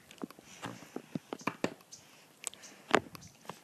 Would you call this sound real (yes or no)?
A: yes